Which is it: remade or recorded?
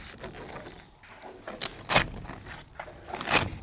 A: recorded